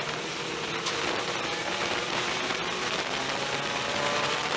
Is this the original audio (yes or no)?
yes